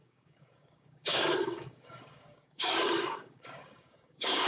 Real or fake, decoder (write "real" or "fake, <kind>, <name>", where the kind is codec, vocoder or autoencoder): fake, codec, DAC